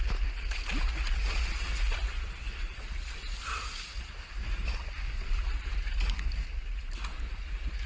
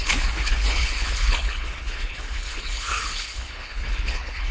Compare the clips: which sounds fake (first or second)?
second